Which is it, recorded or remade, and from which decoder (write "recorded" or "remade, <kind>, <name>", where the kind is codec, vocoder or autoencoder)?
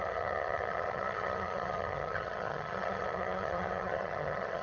remade, vocoder, HiFi-GAN